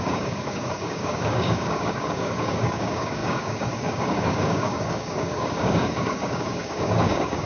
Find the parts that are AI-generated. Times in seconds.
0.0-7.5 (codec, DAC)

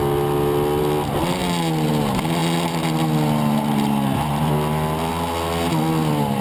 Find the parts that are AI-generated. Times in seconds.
none

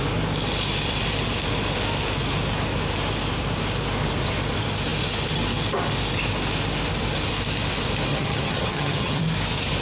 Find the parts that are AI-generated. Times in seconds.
8.1-9.2 (vocoder, HiFi-GAN)

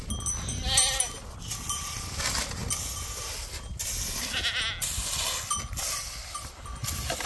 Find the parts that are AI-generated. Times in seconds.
none

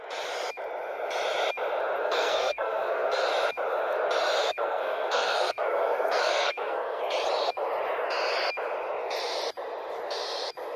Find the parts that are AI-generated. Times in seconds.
2.0-3.2 (codec, SNAC); 4.4-7.0